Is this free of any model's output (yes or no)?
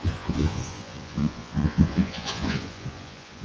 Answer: no